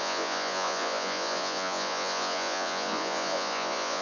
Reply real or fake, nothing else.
fake